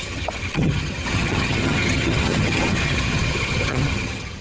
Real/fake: fake